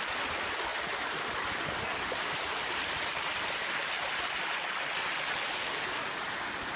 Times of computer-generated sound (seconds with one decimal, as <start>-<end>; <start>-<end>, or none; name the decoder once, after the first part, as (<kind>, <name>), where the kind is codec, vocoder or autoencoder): none